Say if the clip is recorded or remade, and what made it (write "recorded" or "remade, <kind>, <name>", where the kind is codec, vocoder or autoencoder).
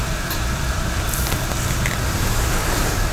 recorded